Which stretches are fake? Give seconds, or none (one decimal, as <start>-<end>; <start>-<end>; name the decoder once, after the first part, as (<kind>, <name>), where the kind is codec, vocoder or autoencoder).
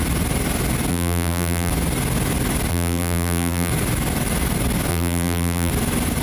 0.9-1.7 (vocoder, BigVGAN v2); 2.7-3.7; 4.9-5.7